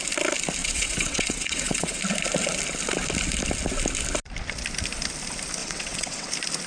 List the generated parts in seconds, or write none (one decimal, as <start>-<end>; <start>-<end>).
0.6-2.0; 5.6-6.3